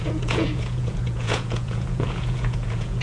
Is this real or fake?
fake